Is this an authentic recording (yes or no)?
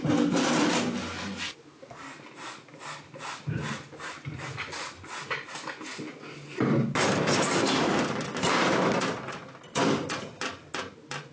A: yes